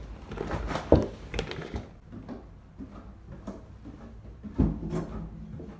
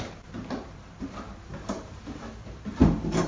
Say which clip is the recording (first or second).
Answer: first